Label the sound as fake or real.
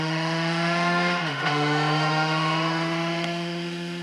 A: fake